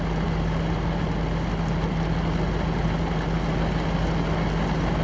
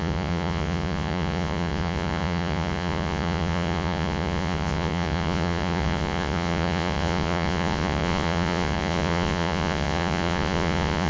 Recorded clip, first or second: first